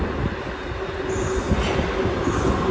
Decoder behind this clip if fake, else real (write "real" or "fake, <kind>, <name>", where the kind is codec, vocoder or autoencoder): real